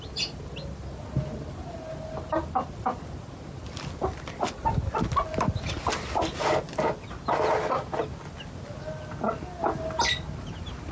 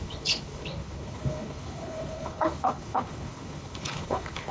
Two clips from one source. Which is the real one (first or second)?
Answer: first